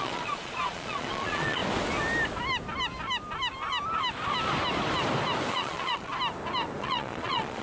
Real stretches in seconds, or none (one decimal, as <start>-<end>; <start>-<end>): 1.6-5.5; 6.1-6.8